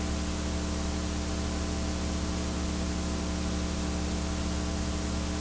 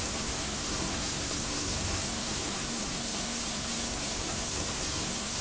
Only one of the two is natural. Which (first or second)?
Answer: first